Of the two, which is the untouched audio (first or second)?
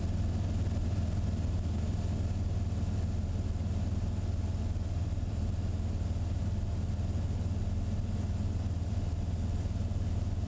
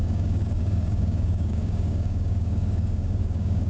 first